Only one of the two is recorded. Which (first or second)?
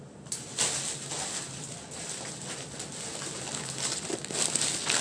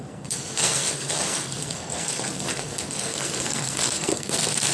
first